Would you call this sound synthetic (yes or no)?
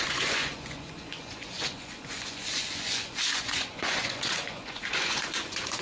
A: yes